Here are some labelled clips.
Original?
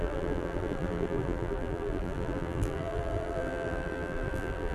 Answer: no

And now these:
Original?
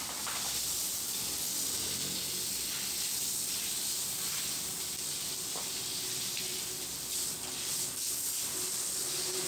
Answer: yes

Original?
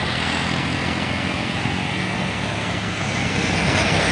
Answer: no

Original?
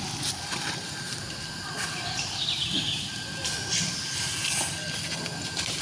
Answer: yes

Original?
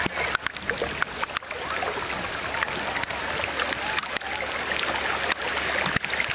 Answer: yes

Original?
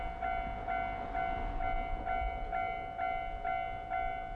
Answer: yes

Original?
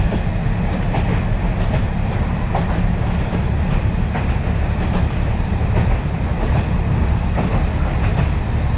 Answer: no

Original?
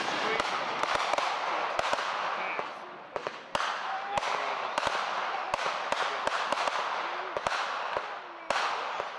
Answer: yes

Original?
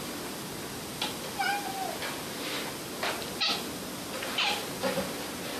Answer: yes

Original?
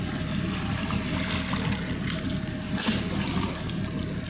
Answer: yes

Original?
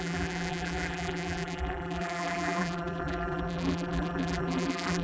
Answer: no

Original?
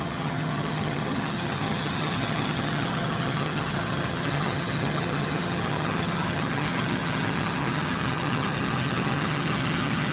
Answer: no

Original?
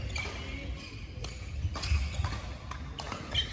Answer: yes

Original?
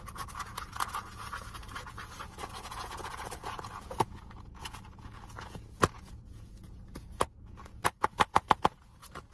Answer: no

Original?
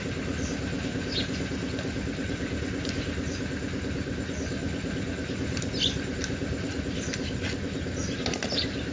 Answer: yes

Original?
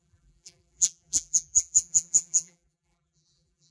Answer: no